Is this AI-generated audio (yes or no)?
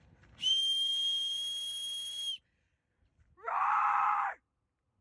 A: yes